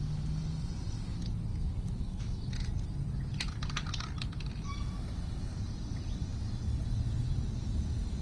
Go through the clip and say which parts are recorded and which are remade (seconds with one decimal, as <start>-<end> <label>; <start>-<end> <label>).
0.0-1.5 recorded; 1.5-2.5 remade; 2.5-8.2 recorded